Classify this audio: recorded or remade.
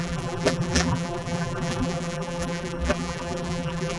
remade